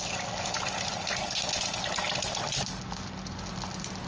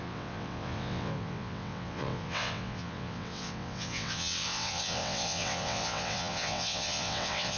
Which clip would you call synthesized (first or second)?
second